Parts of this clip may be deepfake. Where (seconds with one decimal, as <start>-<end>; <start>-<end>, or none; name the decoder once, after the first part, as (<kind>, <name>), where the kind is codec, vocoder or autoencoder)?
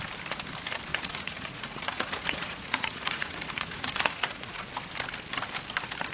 0.9-4.6 (vocoder, Vocos)